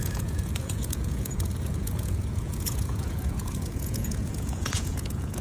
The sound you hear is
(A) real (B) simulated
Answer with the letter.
B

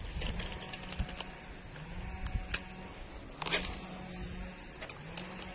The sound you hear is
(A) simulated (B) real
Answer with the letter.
B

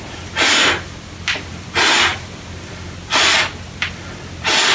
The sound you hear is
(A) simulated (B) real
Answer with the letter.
B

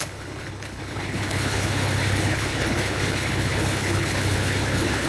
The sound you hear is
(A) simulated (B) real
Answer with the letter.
A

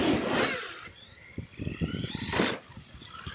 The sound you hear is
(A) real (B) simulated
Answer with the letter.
A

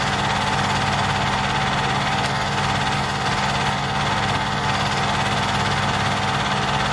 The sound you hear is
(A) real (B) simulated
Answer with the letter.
A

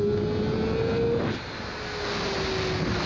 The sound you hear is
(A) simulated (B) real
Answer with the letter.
B